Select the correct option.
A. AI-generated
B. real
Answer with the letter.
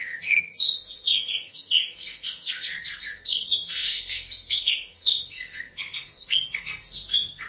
A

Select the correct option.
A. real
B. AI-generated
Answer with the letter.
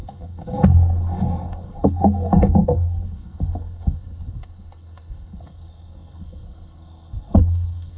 B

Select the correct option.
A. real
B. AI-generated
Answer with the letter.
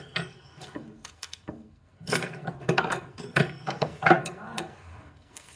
B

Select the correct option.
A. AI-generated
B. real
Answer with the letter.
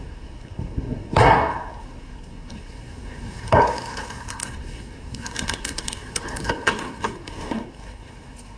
A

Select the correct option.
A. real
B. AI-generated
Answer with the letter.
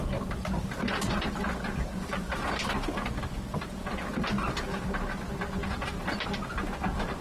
A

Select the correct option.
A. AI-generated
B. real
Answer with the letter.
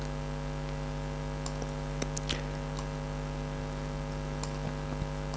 B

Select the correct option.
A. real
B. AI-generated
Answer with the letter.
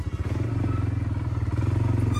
A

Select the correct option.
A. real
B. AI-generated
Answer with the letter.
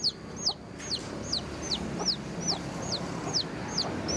A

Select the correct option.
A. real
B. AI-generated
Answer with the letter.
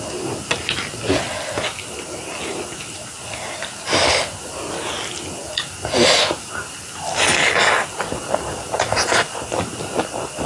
A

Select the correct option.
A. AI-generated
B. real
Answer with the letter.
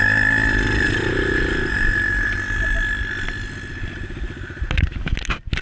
B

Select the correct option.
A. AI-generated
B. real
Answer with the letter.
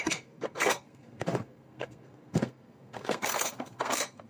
A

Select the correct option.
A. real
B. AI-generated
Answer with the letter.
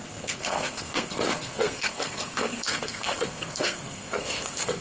B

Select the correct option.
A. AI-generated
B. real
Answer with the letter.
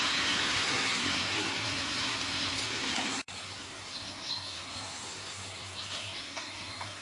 A